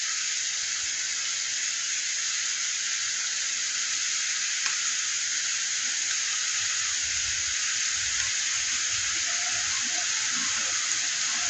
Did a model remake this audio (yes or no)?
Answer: no